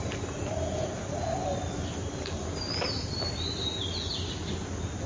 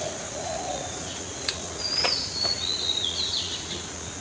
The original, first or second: first